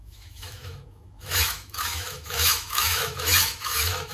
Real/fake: fake